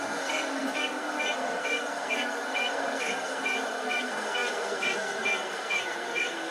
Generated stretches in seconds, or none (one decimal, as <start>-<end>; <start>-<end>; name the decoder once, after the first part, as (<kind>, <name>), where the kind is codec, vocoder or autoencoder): 0.0-6.5 (codec, SNAC)